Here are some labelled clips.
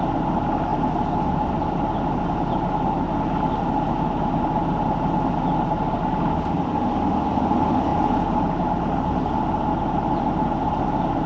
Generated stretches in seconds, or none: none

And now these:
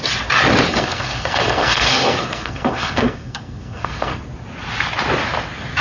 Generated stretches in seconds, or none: 0.7-4.2

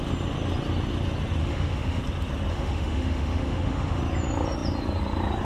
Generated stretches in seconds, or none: 1.4-2.0; 2.5-4.0

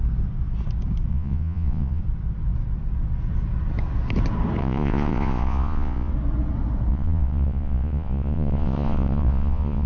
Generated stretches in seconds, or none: 1.1-2.0; 4.6-6.1; 6.9-9.9

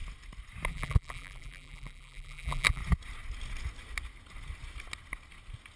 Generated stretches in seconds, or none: 0.7-2.8

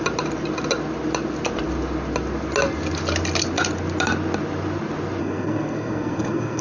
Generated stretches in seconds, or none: 5.2-6.6

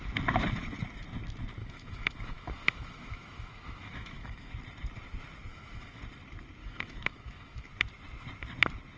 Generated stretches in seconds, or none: 1.6-4.5; 5.5-6.0; 6.6-7.7

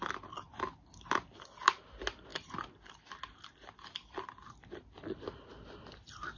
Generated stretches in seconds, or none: none